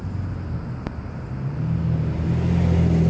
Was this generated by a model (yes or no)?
no